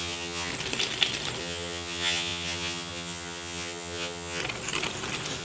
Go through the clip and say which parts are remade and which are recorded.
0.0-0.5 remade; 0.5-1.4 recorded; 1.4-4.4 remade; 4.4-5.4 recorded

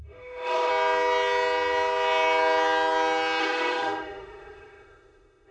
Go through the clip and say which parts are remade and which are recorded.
0.0-0.7 remade; 0.7-3.4 recorded; 3.4-5.5 remade

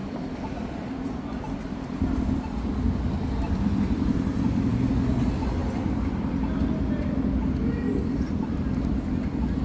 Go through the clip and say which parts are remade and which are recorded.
0.0-4.8 remade; 4.8-7.9 recorded; 7.9-8.6 remade; 8.6-9.6 recorded

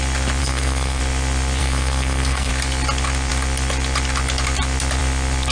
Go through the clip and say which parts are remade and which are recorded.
0.0-0.4 recorded; 0.4-1.0 remade; 1.0-1.6 recorded; 1.6-2.5 remade; 2.5-5.5 recorded

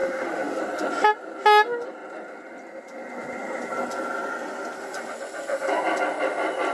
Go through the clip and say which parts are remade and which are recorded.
0.0-0.6 remade; 0.6-6.7 recorded

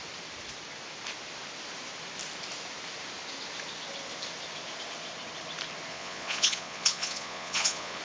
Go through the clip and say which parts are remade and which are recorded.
0.0-5.9 recorded; 5.9-8.0 remade

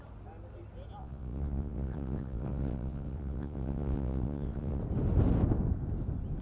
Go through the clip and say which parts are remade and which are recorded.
0.0-1.0 recorded; 1.0-4.8 remade; 4.8-6.4 recorded